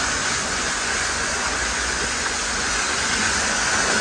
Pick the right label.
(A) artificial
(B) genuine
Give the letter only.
A